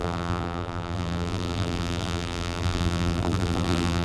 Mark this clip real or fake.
fake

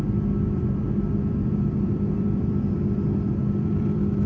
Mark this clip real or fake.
fake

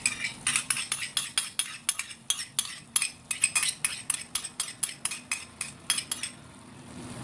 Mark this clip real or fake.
real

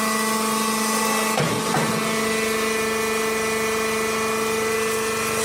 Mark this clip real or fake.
real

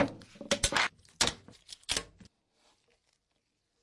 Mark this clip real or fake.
real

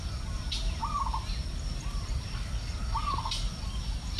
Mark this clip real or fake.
real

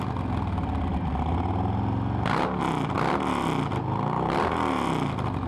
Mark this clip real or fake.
real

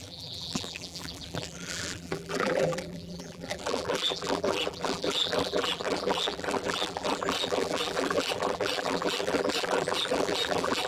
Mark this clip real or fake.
fake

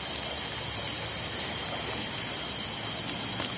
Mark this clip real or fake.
real